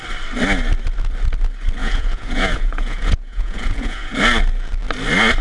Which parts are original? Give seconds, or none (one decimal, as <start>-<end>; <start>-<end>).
0.0-1.8; 4.2-5.4